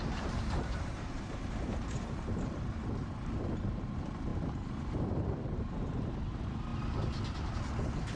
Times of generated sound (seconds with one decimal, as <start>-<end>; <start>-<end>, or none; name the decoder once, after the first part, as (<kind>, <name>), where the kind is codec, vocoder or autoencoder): 0.0-6.7 (vocoder, BigVGAN v2)

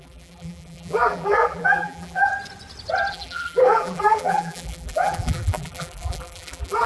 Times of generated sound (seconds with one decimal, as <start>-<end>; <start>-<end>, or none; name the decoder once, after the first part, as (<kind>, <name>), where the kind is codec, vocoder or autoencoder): 0.0-2.3 (vocoder, BigVGAN v2); 3.1-6.9

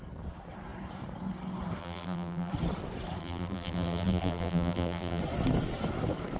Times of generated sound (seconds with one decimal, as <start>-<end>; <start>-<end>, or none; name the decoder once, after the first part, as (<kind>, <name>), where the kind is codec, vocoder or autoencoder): 1.8-2.5 (vocoder, BigVGAN v2); 3.2-5.2

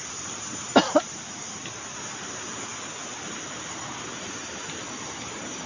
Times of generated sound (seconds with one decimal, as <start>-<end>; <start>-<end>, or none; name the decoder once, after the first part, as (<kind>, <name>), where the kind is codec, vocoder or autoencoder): 4.4-5.7 (vocoder, BigVGAN v2)

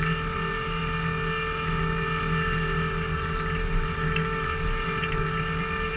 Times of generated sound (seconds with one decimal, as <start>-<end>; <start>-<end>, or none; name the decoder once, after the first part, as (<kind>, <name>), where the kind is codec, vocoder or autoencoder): none

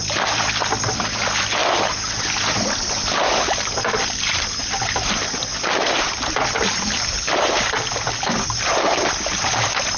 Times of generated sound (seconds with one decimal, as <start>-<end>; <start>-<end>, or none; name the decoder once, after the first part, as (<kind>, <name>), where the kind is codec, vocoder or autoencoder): 0.0-1.6 (vocoder, BigVGAN v2); 2.6-5.5; 8.2-10.0